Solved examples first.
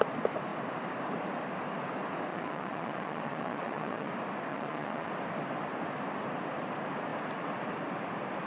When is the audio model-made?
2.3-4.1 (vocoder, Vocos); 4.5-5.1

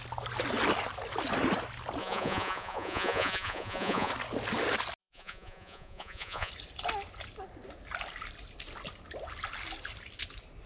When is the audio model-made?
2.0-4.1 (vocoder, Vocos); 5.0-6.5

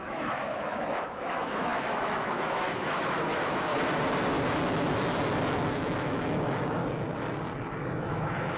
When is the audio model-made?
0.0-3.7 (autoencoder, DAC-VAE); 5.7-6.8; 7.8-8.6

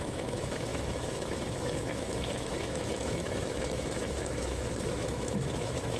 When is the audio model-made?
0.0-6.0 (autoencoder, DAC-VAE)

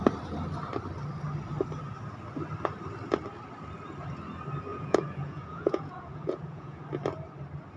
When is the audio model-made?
4.7-6.8 (vocoder, Vocos)